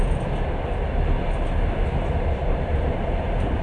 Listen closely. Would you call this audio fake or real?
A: real